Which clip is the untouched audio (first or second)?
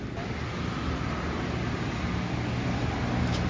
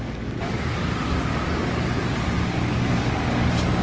first